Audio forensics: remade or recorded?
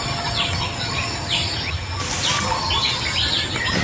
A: recorded